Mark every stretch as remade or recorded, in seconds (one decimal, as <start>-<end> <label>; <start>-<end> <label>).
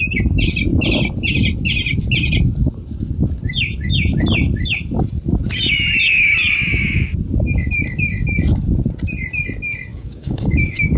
0.0-9.9 recorded; 9.9-11.0 remade